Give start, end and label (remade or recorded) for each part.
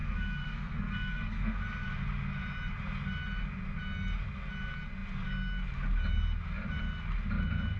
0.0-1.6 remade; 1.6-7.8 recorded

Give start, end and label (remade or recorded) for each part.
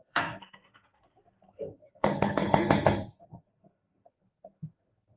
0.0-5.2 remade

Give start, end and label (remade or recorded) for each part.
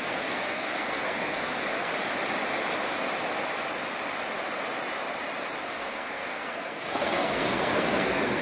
0.0-1.9 remade; 1.9-5.7 recorded; 5.7-8.4 remade